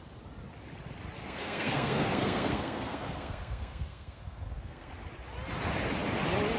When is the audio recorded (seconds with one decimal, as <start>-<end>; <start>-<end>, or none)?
0.0-1.2; 4.9-6.6